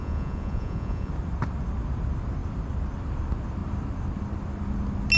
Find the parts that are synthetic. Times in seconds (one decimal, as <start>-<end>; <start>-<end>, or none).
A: 0.0-1.1